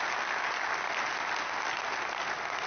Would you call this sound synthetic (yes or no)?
no